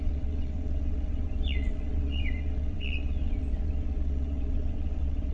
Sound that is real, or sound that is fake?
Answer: fake